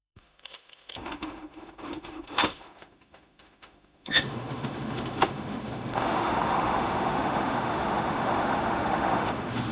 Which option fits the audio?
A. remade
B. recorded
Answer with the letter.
A